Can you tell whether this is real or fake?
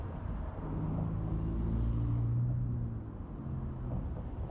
real